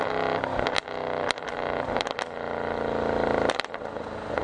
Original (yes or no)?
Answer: yes